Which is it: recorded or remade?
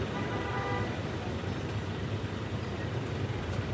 remade